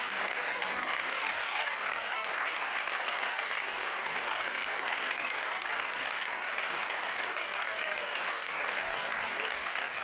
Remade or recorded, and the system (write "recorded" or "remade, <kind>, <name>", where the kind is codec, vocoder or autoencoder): remade, codec, DAC